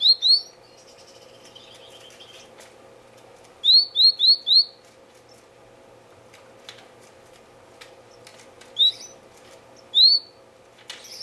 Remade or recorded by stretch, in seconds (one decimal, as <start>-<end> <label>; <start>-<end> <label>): 0.0-11.2 recorded

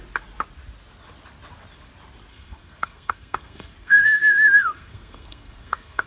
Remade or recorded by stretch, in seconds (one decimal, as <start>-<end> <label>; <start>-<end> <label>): 0.0-2.3 recorded; 2.3-6.1 remade

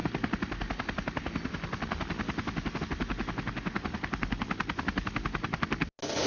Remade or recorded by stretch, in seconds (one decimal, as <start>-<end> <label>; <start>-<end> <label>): 0.0-6.3 recorded